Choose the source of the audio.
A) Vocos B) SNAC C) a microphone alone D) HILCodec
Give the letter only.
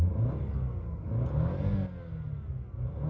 C